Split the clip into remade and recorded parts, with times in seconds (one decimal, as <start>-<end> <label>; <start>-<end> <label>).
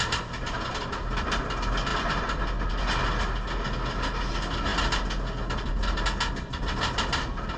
0.0-7.6 recorded